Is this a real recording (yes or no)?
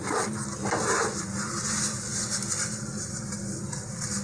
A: yes